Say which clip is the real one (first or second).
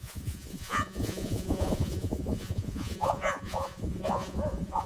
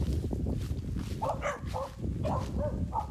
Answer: second